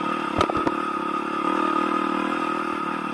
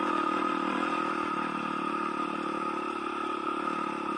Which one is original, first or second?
first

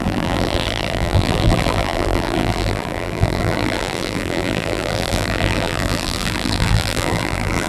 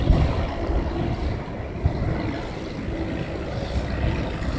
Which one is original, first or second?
second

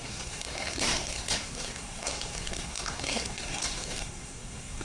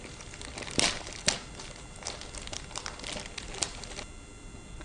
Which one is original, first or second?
second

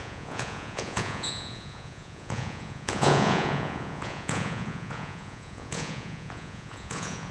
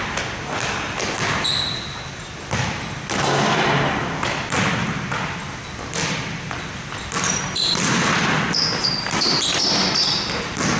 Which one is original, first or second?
second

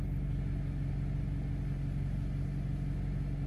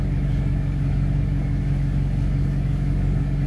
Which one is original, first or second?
first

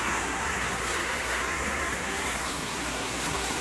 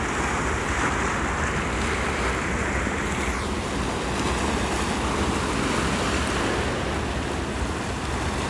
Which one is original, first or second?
second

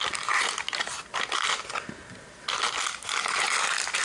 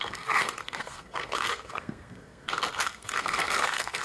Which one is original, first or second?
first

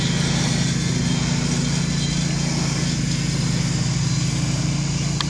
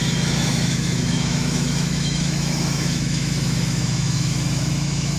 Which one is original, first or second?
first